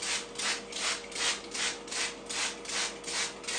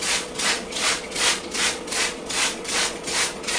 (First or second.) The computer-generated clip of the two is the second